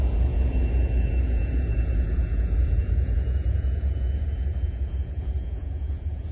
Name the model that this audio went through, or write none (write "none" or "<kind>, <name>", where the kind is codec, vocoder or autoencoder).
vocoder, Vocos